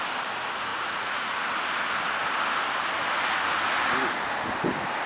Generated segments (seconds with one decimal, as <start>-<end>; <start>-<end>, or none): 0.7-1.3